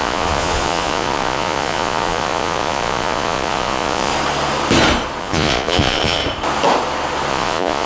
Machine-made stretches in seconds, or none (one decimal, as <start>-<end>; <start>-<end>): 0.0-4.1; 5.2-6.2; 7.3-7.9